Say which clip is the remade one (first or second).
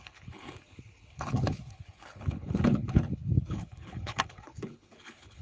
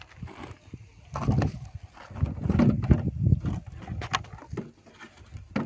first